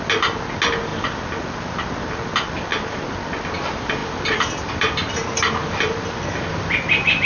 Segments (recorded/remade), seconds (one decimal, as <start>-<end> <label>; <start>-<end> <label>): 0.0-4.0 recorded; 4.0-5.1 remade; 5.1-7.3 recorded